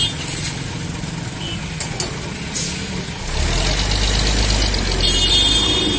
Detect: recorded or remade recorded